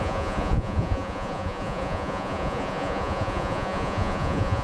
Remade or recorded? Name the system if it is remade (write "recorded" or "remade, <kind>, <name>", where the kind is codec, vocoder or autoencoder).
remade, vocoder, Vocos